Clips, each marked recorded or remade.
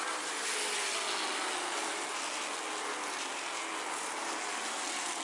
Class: recorded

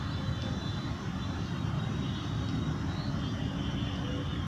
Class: recorded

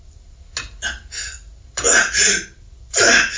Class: recorded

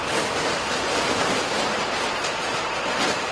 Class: recorded